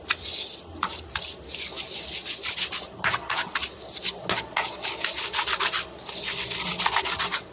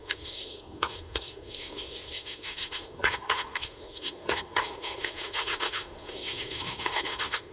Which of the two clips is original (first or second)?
first